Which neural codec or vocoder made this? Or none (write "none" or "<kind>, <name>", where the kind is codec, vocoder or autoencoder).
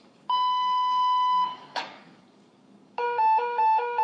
codec, DAC